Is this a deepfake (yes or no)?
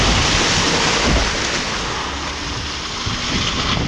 no